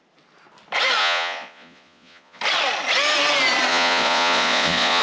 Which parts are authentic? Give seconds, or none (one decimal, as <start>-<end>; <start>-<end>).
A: 0.0-1.0; 2.4-3.7